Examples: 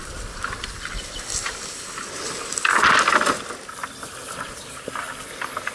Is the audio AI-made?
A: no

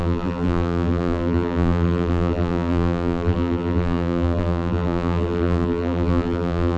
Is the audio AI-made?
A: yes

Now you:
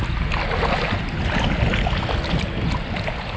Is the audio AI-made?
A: no